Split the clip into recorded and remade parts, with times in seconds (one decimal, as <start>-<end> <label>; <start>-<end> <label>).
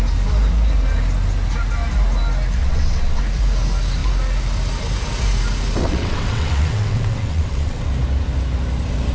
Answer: 0.0-2.6 recorded; 2.6-3.2 remade; 3.2-5.8 recorded; 5.8-7.9 remade; 7.9-9.1 recorded